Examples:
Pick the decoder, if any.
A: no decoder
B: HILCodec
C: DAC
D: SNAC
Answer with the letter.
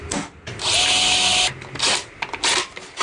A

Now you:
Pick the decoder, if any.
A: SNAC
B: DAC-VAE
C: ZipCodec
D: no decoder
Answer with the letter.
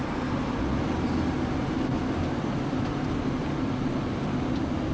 D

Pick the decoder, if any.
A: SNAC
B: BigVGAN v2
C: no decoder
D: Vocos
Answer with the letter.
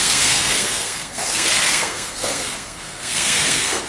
A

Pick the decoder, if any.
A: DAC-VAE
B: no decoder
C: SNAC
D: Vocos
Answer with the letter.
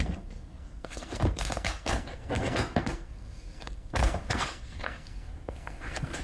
C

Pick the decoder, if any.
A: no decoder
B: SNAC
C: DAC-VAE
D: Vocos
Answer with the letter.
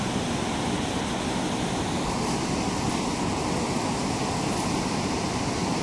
A